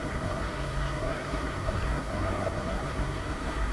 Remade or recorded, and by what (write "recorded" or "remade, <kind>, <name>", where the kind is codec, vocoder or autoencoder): remade, codec, SNAC